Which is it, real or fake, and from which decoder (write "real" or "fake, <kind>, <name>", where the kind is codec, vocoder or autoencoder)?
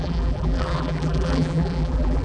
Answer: fake, vocoder, BigVGAN v2